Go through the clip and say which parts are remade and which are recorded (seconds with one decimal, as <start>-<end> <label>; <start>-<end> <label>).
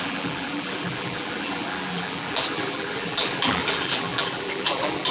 0.0-5.1 remade